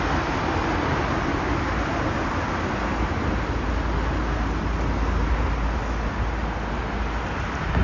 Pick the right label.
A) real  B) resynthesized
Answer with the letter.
A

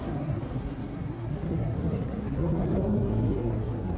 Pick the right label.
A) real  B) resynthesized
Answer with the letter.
B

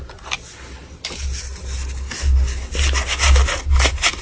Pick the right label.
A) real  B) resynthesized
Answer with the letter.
A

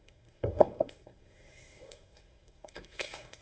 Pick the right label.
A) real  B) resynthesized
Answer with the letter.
B